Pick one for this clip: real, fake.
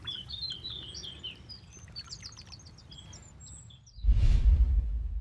real